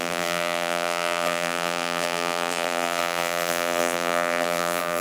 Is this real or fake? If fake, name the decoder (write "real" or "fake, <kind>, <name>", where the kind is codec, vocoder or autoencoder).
fake, vocoder, BigVGAN v2